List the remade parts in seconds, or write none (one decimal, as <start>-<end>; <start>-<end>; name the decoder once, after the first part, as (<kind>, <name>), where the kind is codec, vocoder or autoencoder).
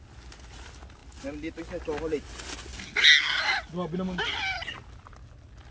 none